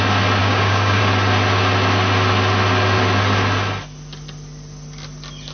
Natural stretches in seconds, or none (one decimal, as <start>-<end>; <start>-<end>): 0.0-0.4; 1.0-5.5